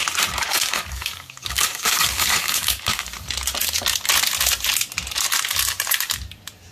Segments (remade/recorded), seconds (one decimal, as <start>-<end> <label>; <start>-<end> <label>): 0.0-0.5 recorded; 0.5-3.0 remade; 3.0-6.7 recorded